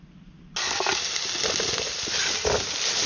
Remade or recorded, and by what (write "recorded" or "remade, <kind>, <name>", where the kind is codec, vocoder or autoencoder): recorded